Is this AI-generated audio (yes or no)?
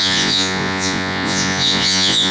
yes